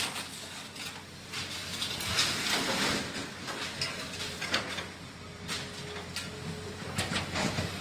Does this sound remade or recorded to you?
recorded